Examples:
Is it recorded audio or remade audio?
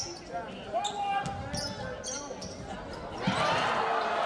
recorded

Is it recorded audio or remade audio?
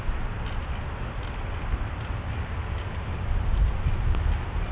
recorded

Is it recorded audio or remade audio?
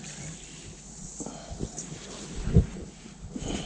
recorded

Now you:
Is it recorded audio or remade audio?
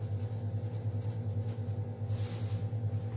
recorded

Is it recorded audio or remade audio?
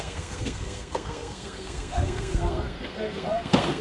remade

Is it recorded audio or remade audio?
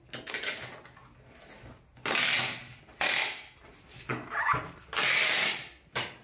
recorded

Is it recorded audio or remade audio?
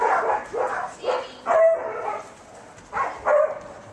recorded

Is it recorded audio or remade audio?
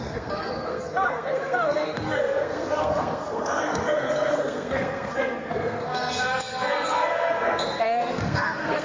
remade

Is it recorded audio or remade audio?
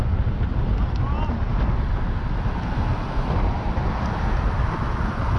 recorded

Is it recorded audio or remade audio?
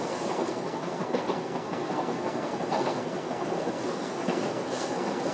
remade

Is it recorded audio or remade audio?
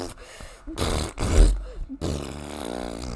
recorded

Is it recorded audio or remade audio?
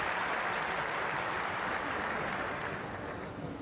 recorded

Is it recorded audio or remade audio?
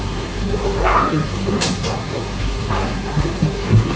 remade